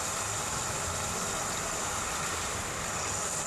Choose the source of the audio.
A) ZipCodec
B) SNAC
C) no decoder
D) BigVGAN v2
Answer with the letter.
C